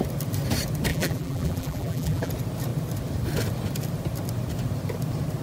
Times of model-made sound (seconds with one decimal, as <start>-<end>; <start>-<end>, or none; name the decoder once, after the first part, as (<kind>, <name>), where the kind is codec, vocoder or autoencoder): 0.9-2.3 (vocoder, BigVGAN v2)

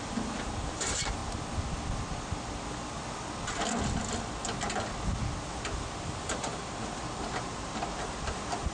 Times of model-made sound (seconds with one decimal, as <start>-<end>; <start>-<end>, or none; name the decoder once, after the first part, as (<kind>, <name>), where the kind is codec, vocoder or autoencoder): 0.0-1.2 (vocoder, BigVGAN v2); 6.0-8.7

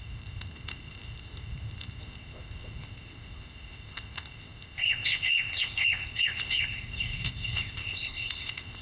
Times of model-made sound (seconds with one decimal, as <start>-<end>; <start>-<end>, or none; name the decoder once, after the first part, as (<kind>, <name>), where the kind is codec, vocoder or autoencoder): 0.0-8.8 (codec, ZipCodec)

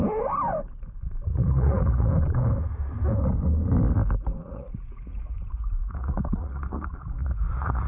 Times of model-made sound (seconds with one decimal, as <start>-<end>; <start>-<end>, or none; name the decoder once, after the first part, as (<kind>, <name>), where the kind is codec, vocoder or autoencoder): 1.3-2.1 (vocoder, Vocos); 4.4-7.9